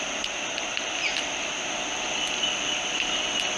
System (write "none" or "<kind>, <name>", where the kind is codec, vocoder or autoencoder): none